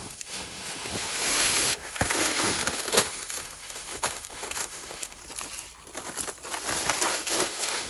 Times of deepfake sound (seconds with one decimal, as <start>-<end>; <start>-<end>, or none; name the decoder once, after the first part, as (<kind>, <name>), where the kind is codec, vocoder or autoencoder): 0.0-5.2 (autoencoder, DAC-VAE); 7.1-7.9